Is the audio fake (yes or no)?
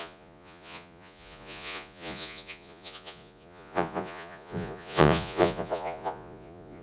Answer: yes